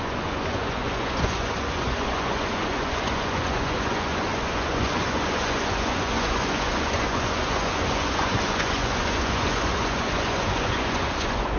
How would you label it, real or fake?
fake